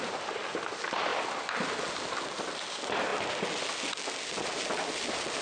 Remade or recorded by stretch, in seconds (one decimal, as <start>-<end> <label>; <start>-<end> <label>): 0.0-5.4 recorded